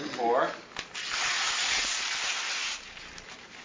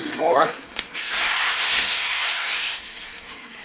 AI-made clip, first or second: second